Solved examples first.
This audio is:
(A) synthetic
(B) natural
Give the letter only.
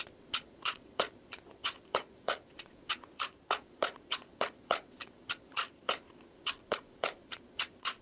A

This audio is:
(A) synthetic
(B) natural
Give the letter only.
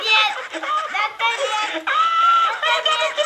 B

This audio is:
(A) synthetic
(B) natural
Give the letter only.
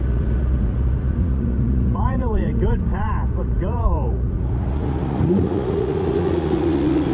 A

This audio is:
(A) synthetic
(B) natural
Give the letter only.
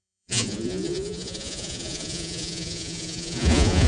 A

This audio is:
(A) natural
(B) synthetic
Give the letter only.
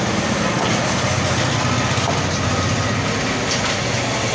A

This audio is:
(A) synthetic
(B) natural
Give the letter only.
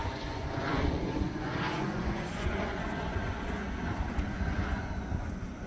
A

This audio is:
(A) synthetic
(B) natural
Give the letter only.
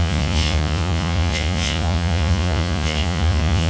A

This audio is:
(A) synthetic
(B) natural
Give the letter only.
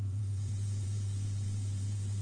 A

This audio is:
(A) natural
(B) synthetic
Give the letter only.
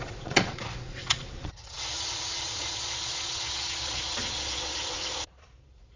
B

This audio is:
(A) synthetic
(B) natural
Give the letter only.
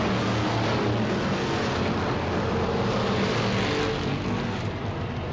B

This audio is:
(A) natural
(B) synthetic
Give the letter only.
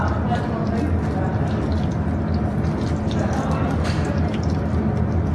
A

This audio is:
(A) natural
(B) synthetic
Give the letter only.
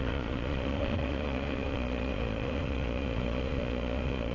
B